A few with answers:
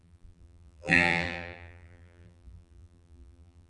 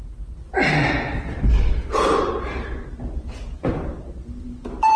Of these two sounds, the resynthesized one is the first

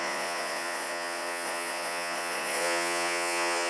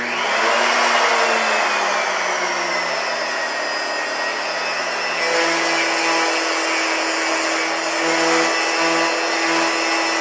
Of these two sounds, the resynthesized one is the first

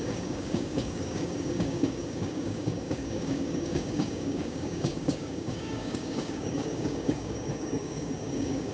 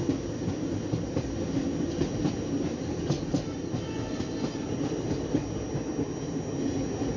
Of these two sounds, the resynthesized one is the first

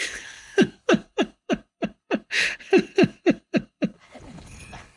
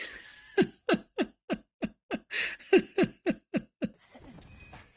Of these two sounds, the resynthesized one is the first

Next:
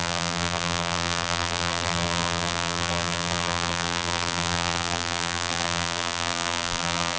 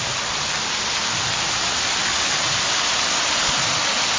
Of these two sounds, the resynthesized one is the first